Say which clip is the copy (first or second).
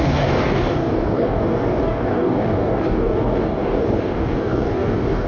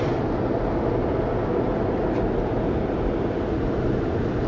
first